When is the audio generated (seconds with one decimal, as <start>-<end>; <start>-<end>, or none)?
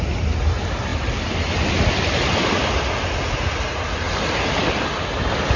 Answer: none